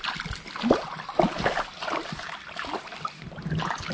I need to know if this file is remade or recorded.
recorded